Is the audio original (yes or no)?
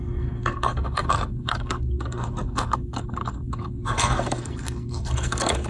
no